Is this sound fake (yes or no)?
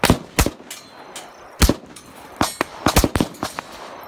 no